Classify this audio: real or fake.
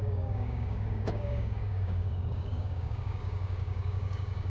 fake